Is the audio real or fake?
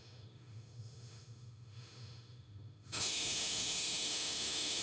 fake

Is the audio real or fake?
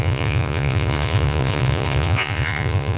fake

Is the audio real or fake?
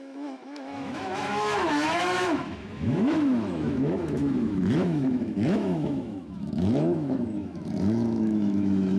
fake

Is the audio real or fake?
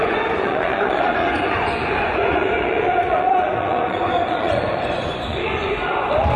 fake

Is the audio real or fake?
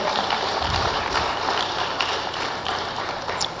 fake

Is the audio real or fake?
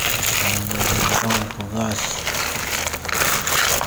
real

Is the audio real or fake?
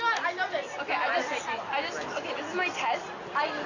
real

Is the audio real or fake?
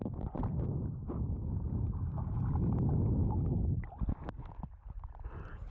real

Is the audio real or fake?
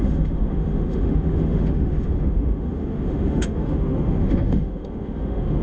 fake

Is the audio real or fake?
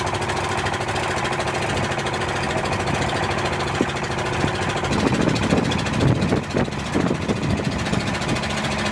real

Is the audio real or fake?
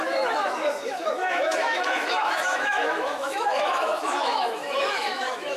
fake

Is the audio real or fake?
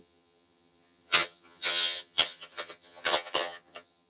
fake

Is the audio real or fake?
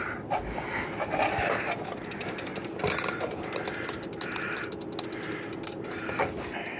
real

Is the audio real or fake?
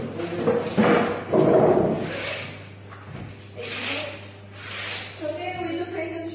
real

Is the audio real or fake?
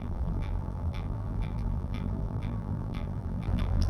fake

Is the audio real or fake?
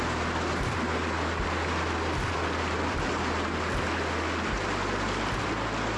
real